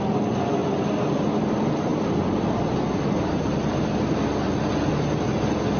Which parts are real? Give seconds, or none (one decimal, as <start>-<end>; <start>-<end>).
0.0-5.8